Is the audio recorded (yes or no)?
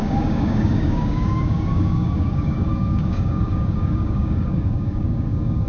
no